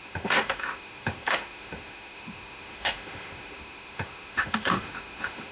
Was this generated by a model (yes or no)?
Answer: yes